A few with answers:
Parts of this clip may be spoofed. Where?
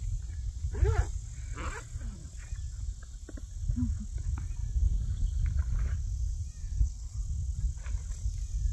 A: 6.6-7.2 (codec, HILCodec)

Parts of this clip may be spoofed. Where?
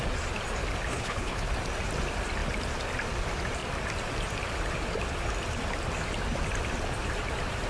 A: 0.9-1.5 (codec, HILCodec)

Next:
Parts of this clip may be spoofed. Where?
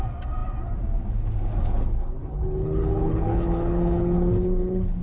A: 1.9-5.0 (codec, HILCodec)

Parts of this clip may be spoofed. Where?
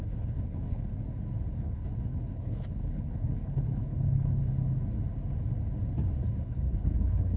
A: 0.0-0.9 (codec, HILCodec); 1.5-4.4; 6.4-7.4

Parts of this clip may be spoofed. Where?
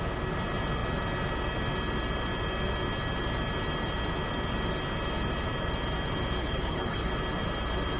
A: 6.4-7.1 (codec, HILCodec)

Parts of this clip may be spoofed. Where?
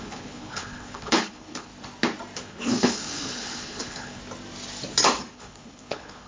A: 0.0-1.7 (codec, HILCodec); 2.4-4.2; 5.3-6.3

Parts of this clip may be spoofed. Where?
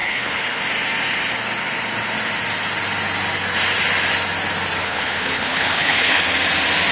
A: 0.0-0.6 (codec, HILCodec); 4.8-6.2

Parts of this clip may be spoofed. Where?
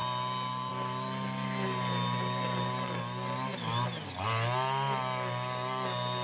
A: none